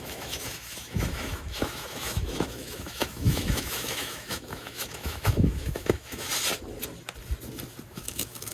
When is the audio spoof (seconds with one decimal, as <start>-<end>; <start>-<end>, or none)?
0.0-6.3; 7.9-8.5